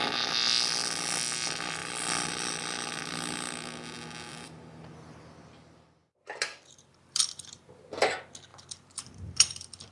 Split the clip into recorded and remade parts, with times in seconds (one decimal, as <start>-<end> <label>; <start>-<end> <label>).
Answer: 0.0-1.8 recorded; 1.8-2.5 remade; 2.5-6.0 recorded; 6.0-7.8 remade; 7.8-8.5 recorded; 8.5-9.9 remade